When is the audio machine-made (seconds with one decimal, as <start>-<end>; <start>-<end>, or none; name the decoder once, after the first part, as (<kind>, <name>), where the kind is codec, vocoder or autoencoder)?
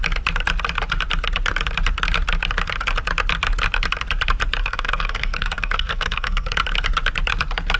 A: 4.6-6.6 (codec, SNAC)